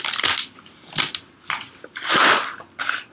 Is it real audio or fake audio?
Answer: real